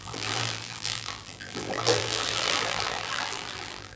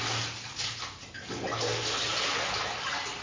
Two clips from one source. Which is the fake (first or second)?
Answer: first